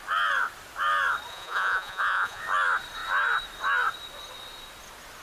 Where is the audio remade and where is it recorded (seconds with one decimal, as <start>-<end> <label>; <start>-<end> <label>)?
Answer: 0.0-1.3 recorded; 1.3-2.4 remade; 2.4-5.2 recorded